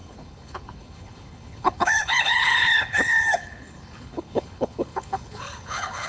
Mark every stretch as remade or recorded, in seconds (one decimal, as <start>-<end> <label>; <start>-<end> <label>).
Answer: 0.0-6.1 remade